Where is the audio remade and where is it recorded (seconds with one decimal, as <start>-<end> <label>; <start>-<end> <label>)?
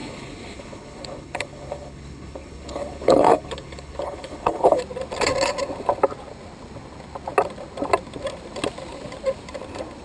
0.0-4.8 remade; 4.8-10.0 recorded